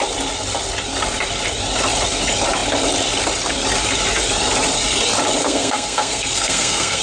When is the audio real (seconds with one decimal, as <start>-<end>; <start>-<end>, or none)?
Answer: 0.0-5.4